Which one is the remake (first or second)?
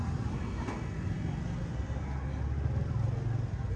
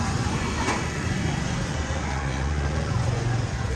second